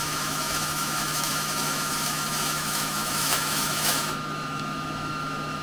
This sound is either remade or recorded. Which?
remade